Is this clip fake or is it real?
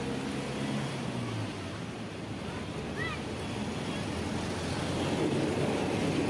real